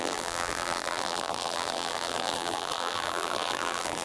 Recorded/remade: remade